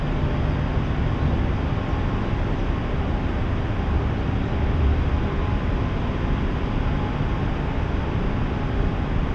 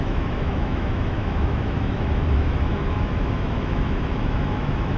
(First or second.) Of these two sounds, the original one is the first